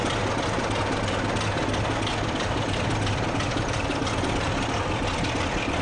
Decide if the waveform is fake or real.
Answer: real